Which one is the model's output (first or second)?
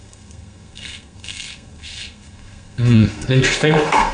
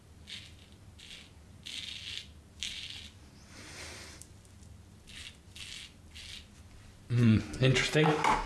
first